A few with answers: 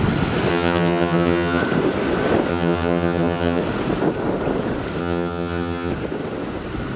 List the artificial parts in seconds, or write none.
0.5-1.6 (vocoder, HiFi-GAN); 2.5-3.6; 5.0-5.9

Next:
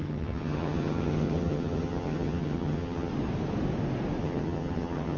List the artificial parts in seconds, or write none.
0.0-3.1 (vocoder, HiFi-GAN); 4.2-5.2

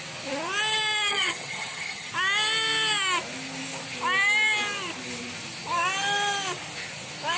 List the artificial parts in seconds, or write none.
1.1-2.1 (vocoder, HiFi-GAN)

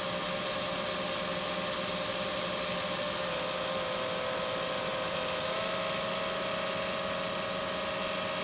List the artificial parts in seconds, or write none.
none